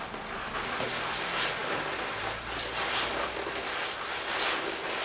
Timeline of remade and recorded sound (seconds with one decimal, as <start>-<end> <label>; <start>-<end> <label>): 0.0-5.0 recorded